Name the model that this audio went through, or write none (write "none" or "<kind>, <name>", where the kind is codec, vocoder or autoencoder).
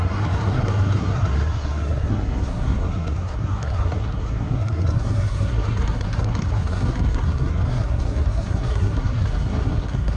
codec, SNAC